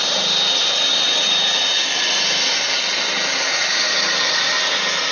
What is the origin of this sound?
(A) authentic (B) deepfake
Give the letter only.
A